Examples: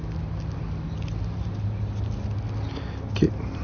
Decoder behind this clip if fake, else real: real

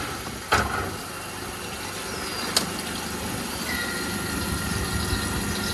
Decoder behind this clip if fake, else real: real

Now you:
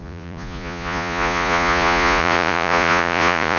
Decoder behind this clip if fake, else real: fake, vocoder, Vocos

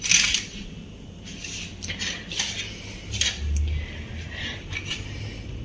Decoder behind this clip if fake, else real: real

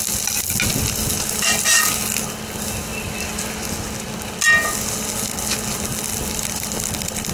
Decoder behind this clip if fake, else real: real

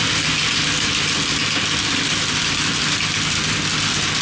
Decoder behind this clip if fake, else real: real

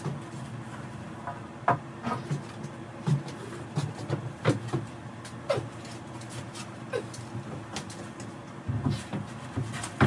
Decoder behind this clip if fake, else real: real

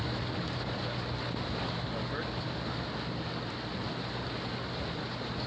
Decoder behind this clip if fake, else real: real